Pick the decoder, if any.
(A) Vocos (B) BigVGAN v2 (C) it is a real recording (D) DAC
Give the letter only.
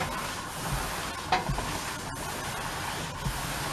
C